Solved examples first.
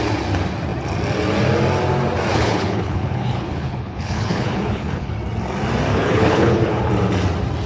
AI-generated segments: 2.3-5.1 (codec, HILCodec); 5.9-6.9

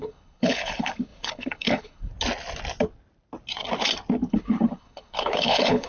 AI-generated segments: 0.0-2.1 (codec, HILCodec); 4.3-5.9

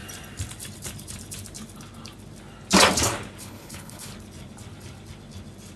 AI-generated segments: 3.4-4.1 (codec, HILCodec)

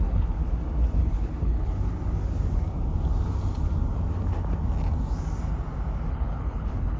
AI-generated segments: 0.0-0.4 (codec, HILCodec); 1.0-1.9; 6.1-7.0

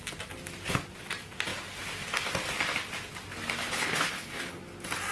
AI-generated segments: 3.6-4.6 (codec, HILCodec)